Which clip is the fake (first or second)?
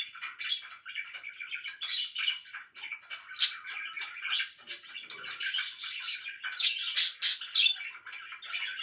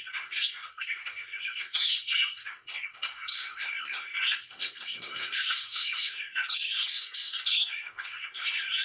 second